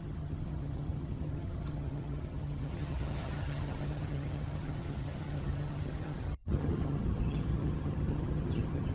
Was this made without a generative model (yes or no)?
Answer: no